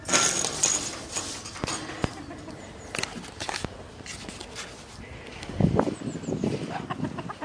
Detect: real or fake real